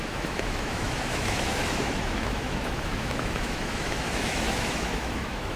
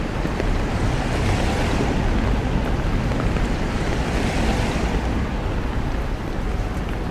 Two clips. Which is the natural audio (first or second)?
second